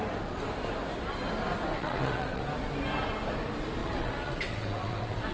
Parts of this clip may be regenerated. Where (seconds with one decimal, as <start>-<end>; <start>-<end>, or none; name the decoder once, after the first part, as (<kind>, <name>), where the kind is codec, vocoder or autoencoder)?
1.8-2.4 (vocoder, WaveNeXt); 3.8-5.3